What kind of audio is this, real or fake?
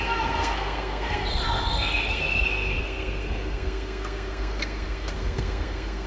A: fake